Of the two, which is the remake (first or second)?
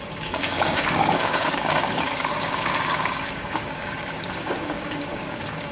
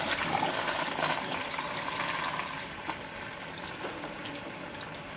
first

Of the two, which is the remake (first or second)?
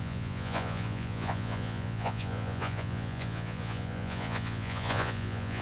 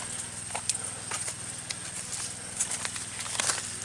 first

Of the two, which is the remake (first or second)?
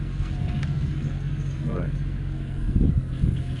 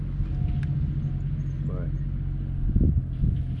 first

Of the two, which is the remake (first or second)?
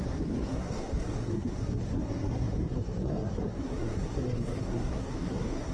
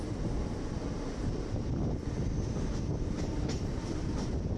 first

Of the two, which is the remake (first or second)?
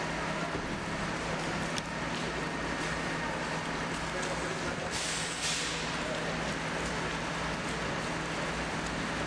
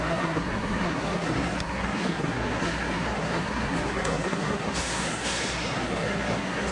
second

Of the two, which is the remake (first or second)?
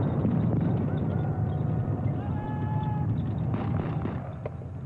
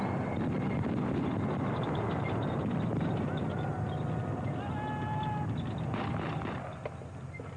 first